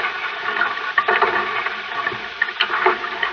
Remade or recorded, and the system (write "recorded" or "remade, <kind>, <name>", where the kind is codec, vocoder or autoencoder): remade, vocoder, BigVGAN v2